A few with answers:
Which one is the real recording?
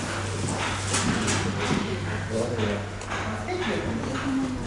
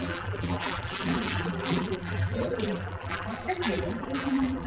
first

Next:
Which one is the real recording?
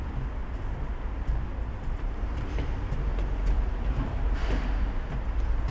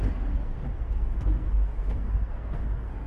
first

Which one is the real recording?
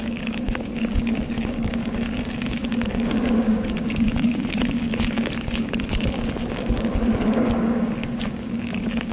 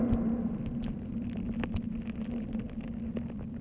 second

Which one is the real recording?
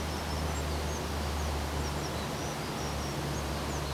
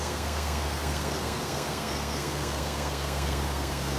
first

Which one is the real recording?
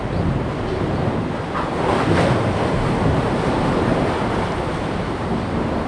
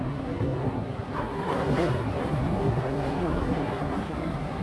first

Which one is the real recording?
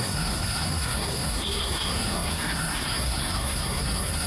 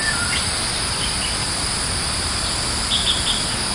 second